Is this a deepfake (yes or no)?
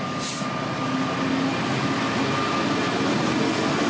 no